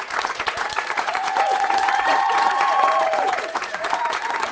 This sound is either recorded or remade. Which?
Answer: remade